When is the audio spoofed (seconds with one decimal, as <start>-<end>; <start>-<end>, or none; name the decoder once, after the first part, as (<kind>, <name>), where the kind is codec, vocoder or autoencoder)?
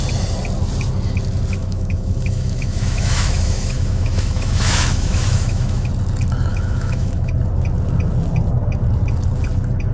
1.6-5.9 (autoencoder, DAC-VAE); 6.5-7.3